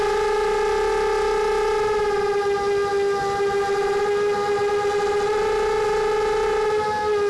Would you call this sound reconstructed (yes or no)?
no